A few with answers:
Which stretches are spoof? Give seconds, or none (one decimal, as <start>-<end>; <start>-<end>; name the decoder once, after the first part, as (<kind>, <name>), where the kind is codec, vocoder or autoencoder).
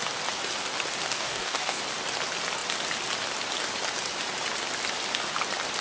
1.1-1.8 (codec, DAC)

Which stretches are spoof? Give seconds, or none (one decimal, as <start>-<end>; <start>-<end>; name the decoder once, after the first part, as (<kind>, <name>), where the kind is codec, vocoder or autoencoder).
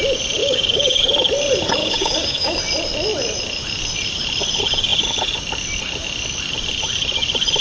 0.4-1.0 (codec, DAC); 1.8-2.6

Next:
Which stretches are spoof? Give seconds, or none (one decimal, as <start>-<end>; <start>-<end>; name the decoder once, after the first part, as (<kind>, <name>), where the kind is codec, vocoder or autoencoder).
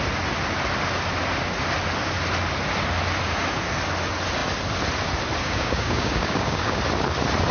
5.4-6.8 (codec, DAC)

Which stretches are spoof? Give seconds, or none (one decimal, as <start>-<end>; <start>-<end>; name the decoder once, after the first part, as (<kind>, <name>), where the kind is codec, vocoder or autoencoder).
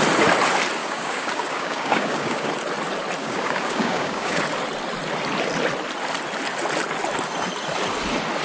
0.8-2.5 (codec, DAC); 3.2-4.4